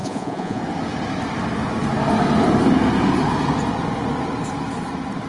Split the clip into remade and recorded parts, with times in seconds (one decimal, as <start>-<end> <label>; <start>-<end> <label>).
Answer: 0.0-0.6 remade; 0.6-5.3 recorded